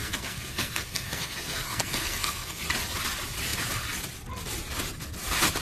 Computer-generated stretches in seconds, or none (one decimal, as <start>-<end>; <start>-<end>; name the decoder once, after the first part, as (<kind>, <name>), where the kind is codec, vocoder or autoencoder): 0.0-2.6 (codec, SNAC)